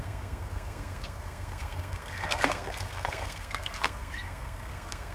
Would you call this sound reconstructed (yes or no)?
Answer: yes